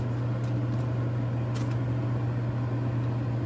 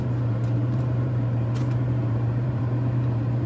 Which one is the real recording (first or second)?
first